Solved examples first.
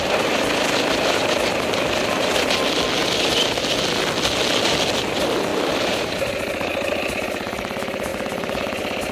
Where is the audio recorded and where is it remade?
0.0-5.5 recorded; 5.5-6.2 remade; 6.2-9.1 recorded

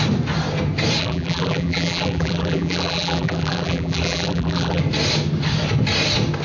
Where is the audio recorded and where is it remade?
0.0-1.0 recorded; 1.0-4.8 remade; 4.8-6.4 recorded

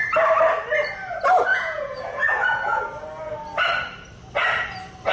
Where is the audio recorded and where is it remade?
0.0-1.5 recorded; 1.5-2.8 remade; 2.8-5.1 recorded

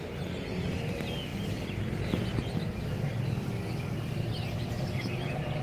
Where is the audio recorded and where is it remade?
0.0-5.6 recorded

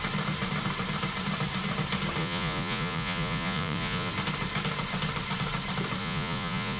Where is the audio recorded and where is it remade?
0.0-2.2 recorded; 2.2-4.1 remade; 4.1-6.0 recorded; 6.0-6.8 remade

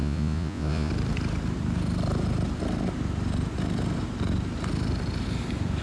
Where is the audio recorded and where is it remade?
0.0-0.9 remade; 0.9-5.8 recorded